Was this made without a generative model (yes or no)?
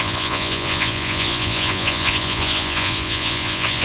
no